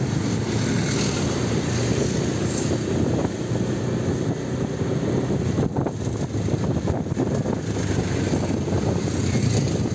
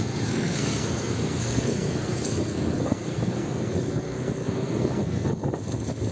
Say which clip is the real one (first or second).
first